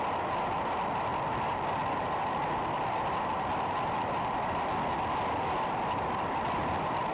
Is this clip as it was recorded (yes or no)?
yes